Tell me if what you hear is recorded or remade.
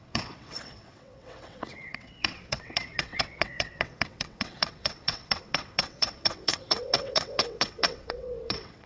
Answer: remade